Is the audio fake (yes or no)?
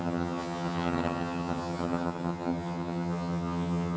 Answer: yes